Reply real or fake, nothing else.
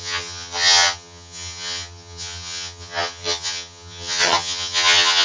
fake